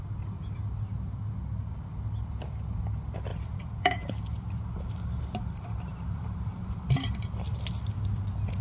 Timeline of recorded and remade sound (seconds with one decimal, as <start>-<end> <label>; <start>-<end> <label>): 0.0-3.3 recorded; 3.3-6.8 remade; 6.8-8.6 recorded